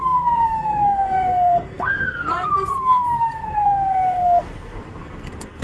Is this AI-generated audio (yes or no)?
yes